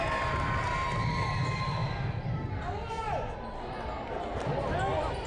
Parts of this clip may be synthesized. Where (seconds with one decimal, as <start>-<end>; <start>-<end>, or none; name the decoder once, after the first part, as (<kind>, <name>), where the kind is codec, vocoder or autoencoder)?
none